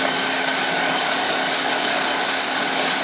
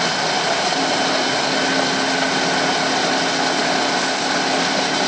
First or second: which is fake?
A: first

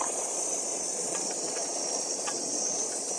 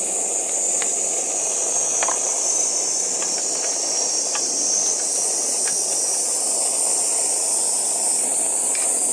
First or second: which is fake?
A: first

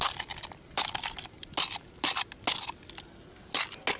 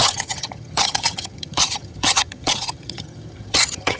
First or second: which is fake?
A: second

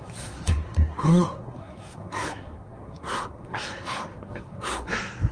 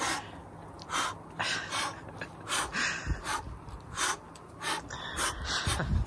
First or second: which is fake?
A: first